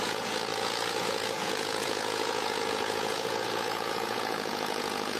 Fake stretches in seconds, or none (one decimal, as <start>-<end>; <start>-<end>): 0.0-5.2